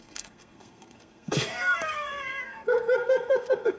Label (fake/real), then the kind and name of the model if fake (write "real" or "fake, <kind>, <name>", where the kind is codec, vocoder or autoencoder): fake, codec, SNAC